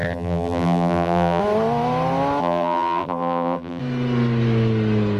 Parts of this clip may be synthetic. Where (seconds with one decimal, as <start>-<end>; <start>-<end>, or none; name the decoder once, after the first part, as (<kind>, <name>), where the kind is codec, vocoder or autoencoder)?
0.0-1.4 (vocoder, BigVGAN v2); 2.4-3.8